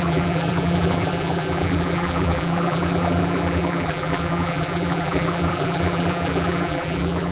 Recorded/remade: remade